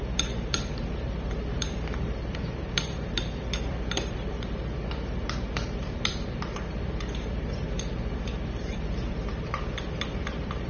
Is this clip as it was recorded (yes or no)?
no